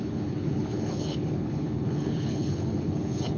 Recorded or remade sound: remade